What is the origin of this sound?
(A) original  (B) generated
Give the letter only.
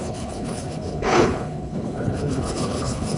B